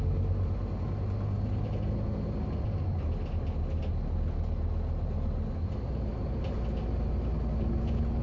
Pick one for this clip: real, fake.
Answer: real